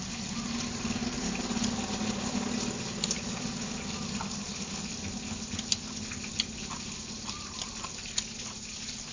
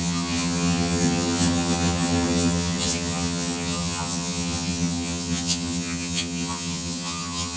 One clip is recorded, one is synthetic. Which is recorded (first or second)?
first